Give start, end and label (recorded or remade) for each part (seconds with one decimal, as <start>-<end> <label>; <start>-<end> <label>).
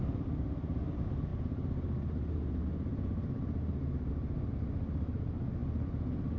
0.0-6.4 recorded